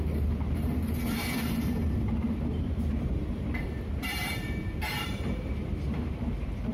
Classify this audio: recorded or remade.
remade